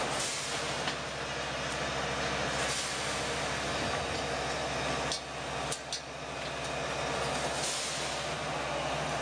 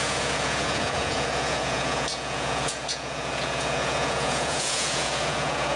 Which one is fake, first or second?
second